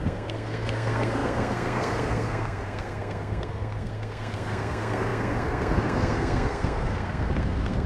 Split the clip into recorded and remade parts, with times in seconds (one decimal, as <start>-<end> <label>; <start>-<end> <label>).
0.0-7.9 remade